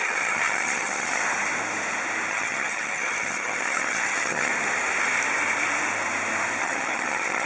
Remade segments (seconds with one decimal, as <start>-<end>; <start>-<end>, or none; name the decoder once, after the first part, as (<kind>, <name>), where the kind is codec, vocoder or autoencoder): 0.0-1.2 (vocoder, HiFi-GAN); 2.3-4.5; 6.6-7.5